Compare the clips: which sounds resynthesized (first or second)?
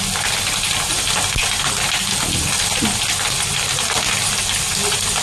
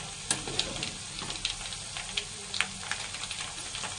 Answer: first